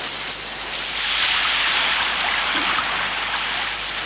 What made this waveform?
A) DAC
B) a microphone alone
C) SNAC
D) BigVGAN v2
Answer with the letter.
B